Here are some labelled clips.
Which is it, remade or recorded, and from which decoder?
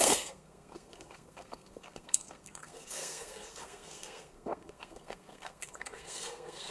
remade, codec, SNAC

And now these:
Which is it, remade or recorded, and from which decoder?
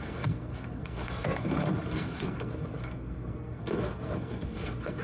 remade, codec, SNAC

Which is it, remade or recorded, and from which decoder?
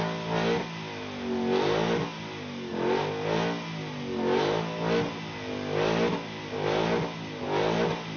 recorded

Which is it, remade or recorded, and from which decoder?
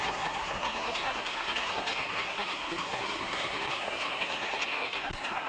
remade, codec, SNAC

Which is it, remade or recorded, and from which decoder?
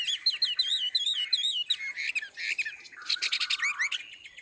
recorded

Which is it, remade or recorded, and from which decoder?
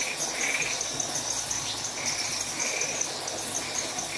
recorded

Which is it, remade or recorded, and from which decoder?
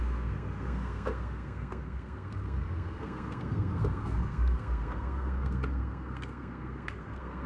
remade, codec, SNAC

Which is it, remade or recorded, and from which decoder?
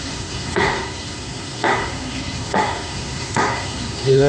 remade, codec, SNAC